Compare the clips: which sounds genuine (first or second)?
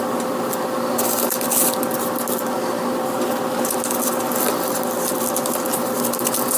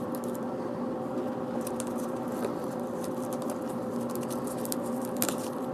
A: first